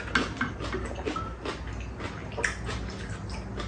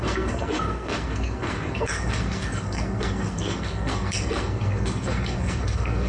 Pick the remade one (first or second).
second